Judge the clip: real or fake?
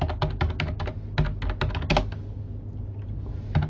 real